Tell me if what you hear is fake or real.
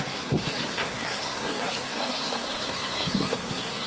fake